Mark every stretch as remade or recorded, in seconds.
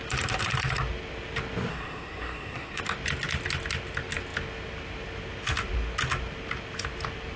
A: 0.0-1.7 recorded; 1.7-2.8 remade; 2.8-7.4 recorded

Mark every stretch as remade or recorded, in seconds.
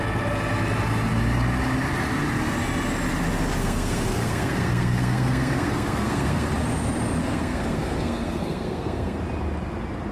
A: 0.0-3.6 recorded; 3.6-6.5 remade; 6.5-7.2 recorded; 7.2-9.2 remade; 9.2-10.1 recorded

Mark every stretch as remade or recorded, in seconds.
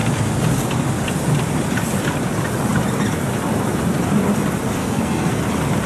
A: 0.0-4.8 recorded; 4.8-5.4 remade; 5.4-5.9 recorded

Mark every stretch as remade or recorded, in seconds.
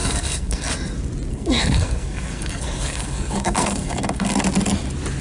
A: 0.0-0.7 remade; 0.7-1.3 recorded; 1.3-4.4 remade; 4.4-5.2 recorded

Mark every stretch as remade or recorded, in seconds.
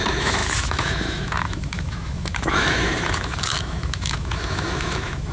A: 0.0-5.3 remade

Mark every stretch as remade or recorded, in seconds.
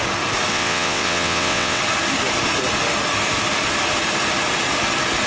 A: 0.0-0.5 recorded; 0.5-1.8 remade; 1.8-5.3 recorded